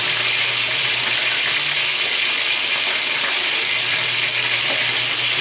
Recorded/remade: recorded